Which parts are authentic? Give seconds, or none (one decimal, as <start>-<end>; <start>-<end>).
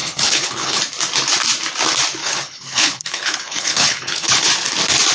0.8-2.2; 4.5-5.1